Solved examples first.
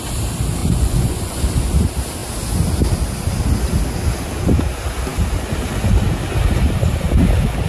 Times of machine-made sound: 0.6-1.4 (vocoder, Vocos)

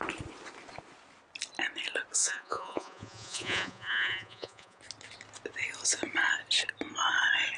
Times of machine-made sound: 2.2-4.8 (vocoder, Vocos)

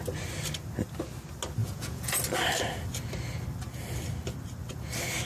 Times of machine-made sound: 1.6-2.2 (vocoder, Vocos)

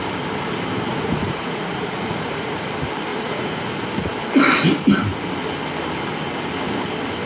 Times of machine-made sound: 0.9-2.7 (vocoder, Vocos); 3.1-3.7

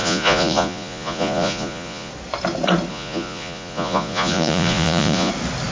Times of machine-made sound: 0.0-2.1 (vocoder, Vocos); 2.9-5.3

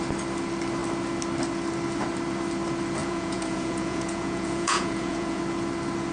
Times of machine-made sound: 3.0-5.4 (vocoder, Vocos)

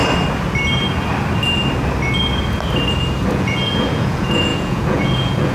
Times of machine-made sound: 3.3-5.5 (vocoder, Vocos)

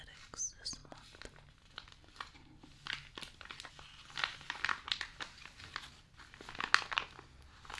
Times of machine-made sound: none